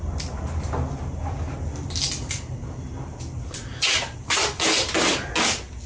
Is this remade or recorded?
recorded